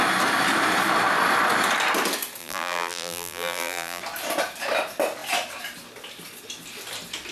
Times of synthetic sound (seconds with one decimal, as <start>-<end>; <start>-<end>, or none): 2.4-4.0